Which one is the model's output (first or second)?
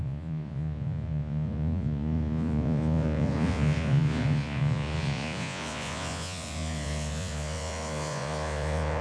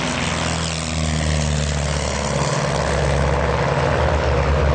first